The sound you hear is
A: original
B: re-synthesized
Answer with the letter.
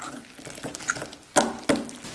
A